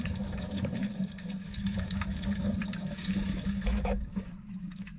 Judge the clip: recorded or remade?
remade